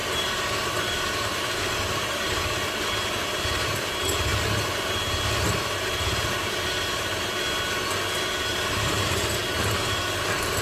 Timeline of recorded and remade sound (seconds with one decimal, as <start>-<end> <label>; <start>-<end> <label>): 0.0-2.4 remade; 2.4-8.5 recorded; 8.5-9.4 remade; 9.4-10.6 recorded